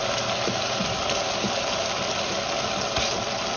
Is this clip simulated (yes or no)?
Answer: no